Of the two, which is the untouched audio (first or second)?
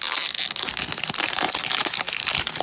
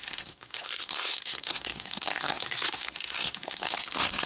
first